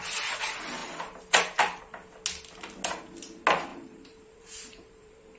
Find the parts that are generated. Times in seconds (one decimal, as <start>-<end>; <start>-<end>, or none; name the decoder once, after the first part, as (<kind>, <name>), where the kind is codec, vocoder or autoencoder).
3.7-5.4 (vocoder, BigVGAN v2)